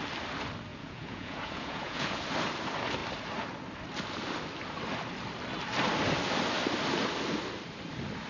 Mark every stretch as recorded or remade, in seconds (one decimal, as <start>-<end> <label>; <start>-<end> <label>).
0.0-0.7 recorded; 0.7-2.2 remade; 2.2-8.3 recorded